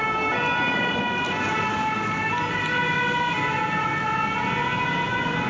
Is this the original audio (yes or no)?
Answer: yes